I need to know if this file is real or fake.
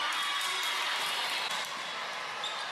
real